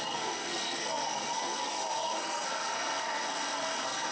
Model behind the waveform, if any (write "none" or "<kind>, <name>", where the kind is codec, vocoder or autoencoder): codec, SNAC